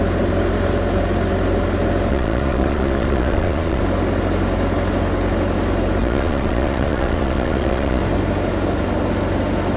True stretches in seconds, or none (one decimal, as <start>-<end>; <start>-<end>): 0.0-2.1; 3.8-6.0; 8.0-9.8

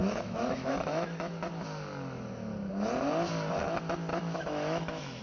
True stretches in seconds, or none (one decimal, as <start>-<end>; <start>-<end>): 1.3-4.1

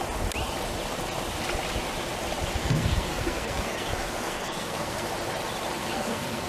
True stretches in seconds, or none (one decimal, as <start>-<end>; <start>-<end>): 0.0-2.6; 5.1-5.8

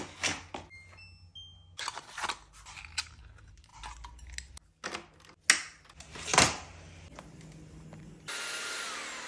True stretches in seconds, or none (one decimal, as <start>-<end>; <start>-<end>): 0.0-9.3

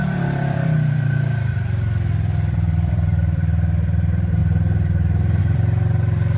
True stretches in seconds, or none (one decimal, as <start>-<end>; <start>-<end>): 4.4-5.4

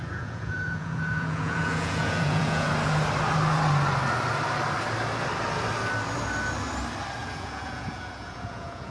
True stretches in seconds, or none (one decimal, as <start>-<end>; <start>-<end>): 2.7-7.2

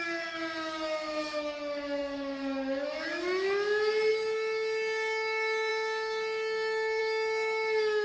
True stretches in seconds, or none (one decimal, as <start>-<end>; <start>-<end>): none

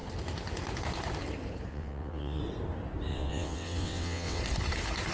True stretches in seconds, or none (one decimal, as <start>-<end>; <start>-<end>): 0.0-1.7; 2.4-3.1; 4.4-5.1